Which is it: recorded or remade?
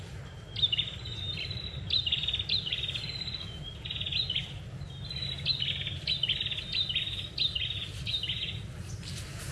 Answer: recorded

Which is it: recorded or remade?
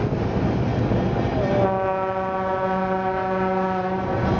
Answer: recorded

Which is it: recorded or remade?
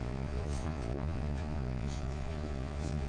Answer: remade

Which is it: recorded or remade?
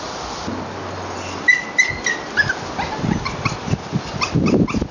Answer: recorded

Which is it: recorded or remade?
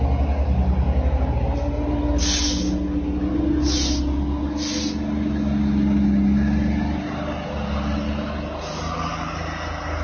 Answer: recorded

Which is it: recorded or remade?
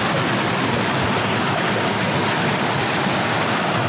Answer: recorded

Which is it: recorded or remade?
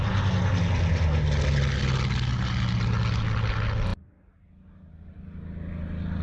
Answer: recorded